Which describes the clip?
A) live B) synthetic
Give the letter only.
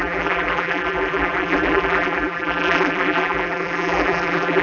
B